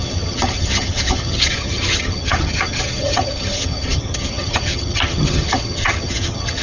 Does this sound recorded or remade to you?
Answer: remade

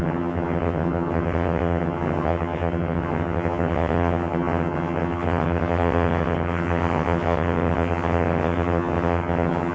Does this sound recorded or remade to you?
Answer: remade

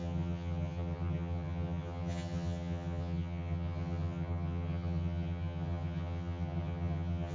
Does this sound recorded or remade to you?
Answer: remade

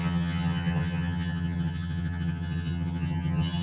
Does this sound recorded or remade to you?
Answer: remade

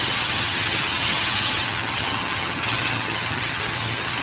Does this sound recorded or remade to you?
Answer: remade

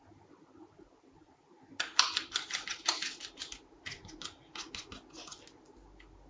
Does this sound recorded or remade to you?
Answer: recorded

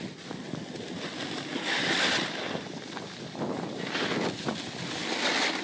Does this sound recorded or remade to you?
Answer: recorded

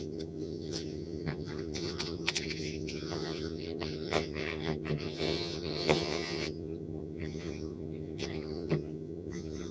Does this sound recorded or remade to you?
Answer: remade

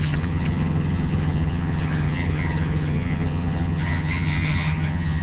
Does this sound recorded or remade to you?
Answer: remade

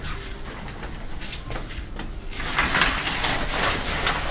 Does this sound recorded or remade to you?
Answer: recorded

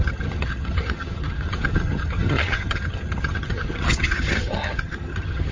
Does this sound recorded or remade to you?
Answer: remade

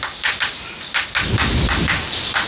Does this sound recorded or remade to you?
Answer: recorded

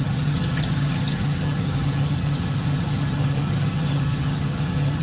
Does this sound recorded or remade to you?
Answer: remade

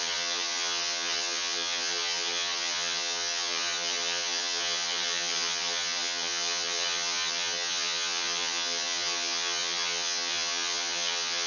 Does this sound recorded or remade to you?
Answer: remade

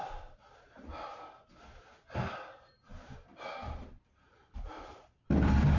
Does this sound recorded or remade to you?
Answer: recorded